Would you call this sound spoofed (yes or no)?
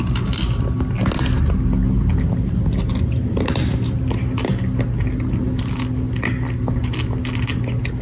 no